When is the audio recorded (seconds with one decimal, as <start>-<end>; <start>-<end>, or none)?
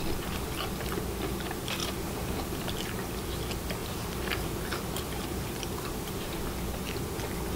0.0-1.8; 2.7-3.8; 6.4-7.6